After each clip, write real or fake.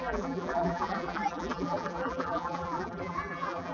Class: fake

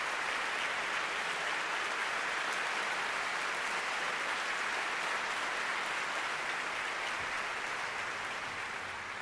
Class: real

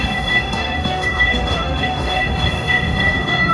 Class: fake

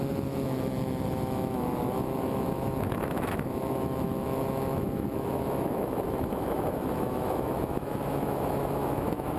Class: fake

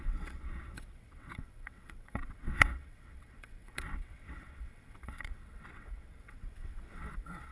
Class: fake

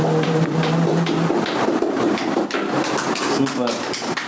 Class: real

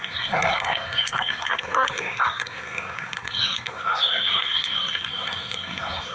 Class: fake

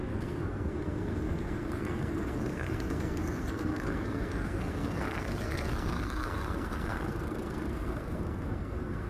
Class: fake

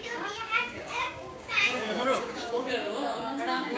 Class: fake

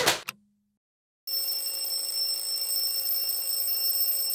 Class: real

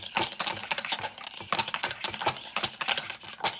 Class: real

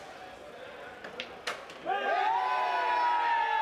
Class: real